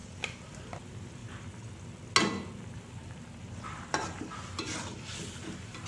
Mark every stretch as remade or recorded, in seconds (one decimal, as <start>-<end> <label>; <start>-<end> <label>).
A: 0.0-1.2 remade; 1.2-2.7 recorded; 2.7-5.9 remade